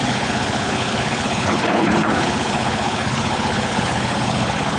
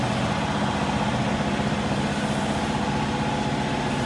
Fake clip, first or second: first